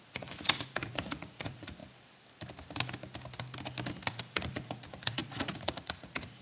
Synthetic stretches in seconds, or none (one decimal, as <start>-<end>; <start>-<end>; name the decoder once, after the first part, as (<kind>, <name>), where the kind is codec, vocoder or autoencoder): 0.0-1.8 (vocoder, Vocos); 4.1-6.4